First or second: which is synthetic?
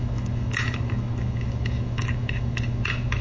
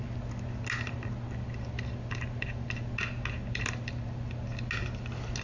first